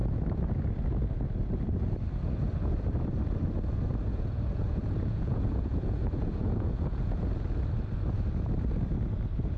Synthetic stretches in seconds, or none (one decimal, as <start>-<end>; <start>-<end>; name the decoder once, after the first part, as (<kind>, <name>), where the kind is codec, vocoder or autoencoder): 4.1-7.2 (vocoder, Vocos)